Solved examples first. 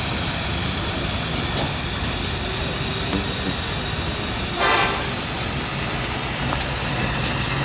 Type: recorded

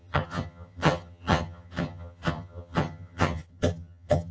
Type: remade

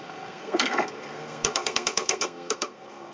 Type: remade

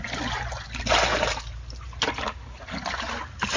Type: recorded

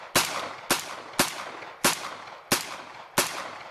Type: recorded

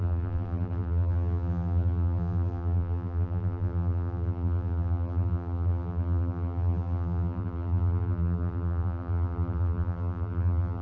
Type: remade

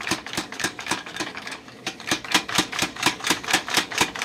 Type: remade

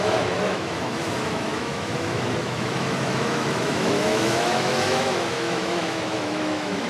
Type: remade